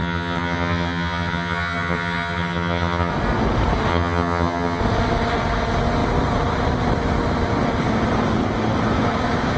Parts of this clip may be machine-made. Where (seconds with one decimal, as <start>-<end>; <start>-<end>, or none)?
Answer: 0.0-3.1; 3.9-4.8